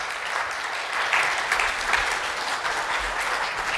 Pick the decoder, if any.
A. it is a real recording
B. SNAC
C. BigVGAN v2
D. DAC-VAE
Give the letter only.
A